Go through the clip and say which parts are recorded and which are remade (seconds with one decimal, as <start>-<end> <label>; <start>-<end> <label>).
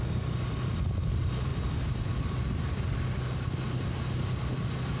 0.0-5.0 recorded